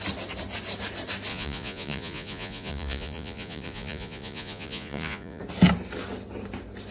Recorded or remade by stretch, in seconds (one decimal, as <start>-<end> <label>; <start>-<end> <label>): 0.0-1.3 recorded; 1.3-5.4 remade; 5.4-6.9 recorded